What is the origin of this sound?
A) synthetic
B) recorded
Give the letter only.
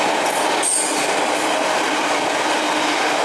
B